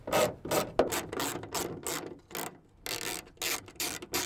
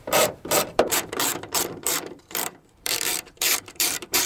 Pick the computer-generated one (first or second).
second